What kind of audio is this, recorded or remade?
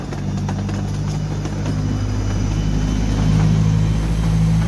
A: recorded